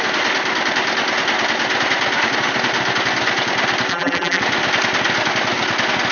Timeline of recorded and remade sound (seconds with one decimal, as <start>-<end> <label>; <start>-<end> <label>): 0.0-3.9 recorded; 3.9-4.4 remade; 4.4-6.1 recorded